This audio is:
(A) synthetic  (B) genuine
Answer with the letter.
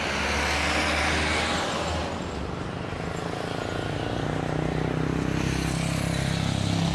B